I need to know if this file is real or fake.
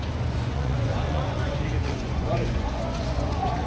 fake